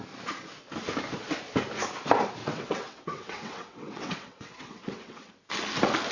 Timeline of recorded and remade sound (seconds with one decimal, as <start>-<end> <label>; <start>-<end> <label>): 0.0-2.4 recorded; 2.4-5.3 remade; 5.3-6.1 recorded